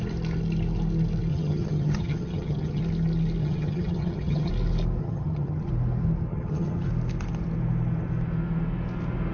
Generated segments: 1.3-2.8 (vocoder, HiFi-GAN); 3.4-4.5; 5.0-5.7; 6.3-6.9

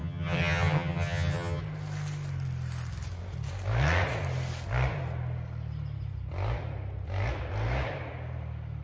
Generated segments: 0.0-1.6 (vocoder, HiFi-GAN)

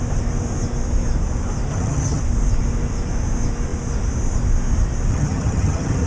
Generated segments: 1.7-2.2 (vocoder, HiFi-GAN); 5.1-6.1